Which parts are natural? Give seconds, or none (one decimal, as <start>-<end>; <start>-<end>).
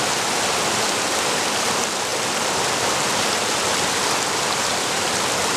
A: 2.1-2.7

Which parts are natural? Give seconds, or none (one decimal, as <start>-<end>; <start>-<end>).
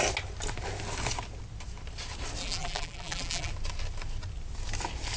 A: 0.0-2.4; 3.5-5.2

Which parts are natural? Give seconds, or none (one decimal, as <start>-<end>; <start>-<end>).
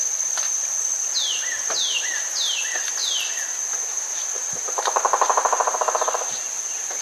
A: 0.0-1.3; 3.0-3.9